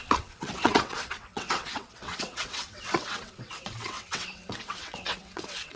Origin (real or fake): fake